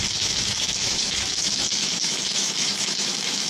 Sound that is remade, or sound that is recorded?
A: remade